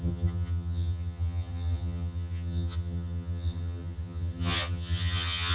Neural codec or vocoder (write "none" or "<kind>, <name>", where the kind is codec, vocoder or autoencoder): vocoder, HiFi-GAN